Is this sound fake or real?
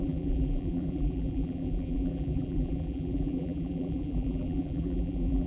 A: fake